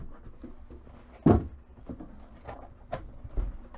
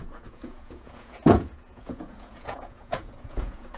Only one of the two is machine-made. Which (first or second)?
second